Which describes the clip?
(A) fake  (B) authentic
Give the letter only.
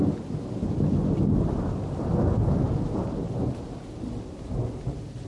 B